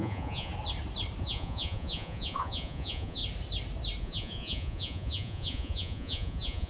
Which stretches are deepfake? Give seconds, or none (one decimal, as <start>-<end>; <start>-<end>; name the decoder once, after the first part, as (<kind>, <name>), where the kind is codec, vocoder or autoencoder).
0.0-0.5 (vocoder, Vocos); 1.2-3.2; 4.0-6.7